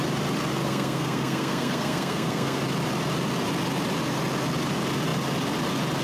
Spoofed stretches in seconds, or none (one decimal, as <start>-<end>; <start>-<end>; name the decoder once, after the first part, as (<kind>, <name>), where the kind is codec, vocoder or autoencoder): 0.6-2.6 (codec, SNAC)